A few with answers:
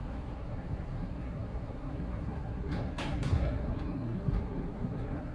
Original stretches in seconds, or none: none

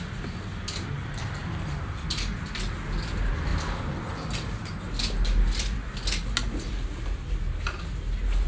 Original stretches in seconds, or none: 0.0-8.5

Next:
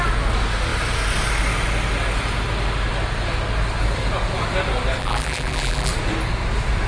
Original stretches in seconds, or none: 0.0-5.0; 5.9-6.9